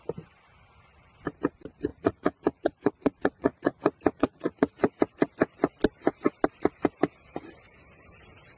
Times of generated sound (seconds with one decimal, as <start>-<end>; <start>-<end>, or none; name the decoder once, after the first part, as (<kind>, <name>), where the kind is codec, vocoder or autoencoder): 1.9-5.0 (vocoder, Vocos)